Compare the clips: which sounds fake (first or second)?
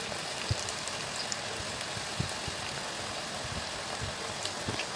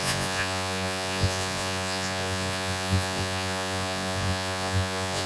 second